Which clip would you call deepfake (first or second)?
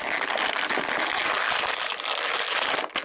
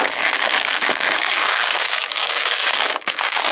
second